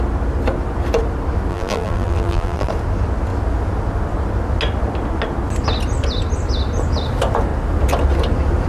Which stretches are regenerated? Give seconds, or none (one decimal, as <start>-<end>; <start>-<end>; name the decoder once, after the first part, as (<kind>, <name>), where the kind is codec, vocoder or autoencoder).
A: 1.5-2.7 (vocoder, BigVGAN v2)